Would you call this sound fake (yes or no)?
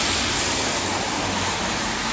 no